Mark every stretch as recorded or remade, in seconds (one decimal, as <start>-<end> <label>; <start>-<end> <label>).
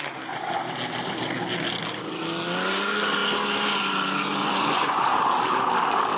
0.0-4.4 recorded; 4.4-5.0 remade; 5.0-6.2 recorded